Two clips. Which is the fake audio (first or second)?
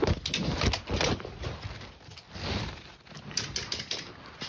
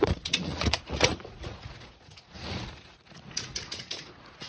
second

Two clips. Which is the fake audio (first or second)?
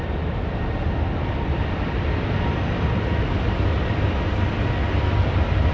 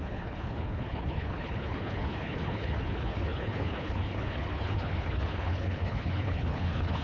second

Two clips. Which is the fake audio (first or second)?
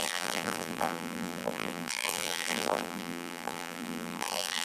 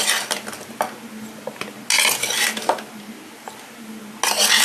first